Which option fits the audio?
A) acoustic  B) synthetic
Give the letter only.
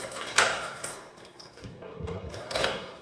B